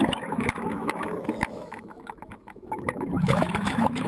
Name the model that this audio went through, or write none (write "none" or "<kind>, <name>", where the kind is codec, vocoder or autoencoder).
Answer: autoencoder, DAC-VAE